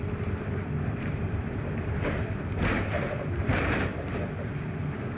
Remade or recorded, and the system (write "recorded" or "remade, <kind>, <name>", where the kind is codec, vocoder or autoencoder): remade, vocoder, BigVGAN v2